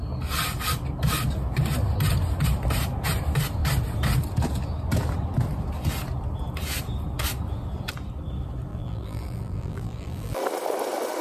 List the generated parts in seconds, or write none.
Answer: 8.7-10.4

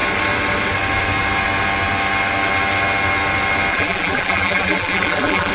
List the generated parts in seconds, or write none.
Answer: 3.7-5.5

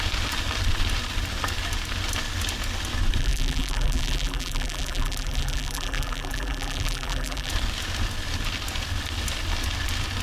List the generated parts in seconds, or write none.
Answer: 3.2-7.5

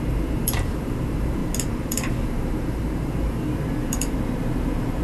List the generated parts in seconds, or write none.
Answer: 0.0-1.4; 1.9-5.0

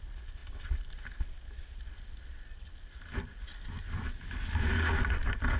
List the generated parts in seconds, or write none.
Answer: none

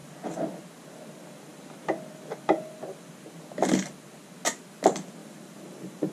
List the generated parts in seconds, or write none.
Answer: 5.2-6.1

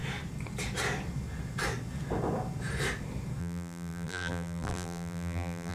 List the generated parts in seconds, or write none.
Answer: 3.4-5.7

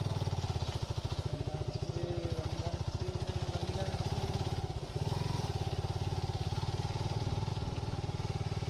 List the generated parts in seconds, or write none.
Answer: none